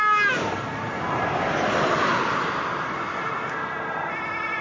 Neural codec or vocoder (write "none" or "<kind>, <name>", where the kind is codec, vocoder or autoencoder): none